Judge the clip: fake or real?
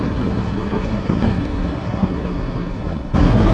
fake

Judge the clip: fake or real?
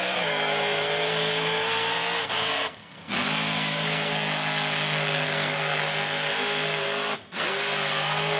fake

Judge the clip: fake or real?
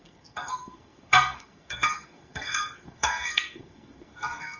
fake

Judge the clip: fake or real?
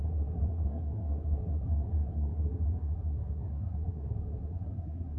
fake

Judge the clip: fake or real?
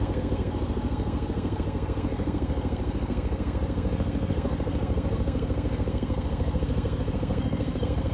fake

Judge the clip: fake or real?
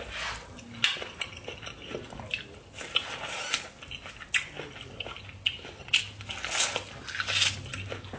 real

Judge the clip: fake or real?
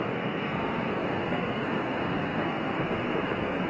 fake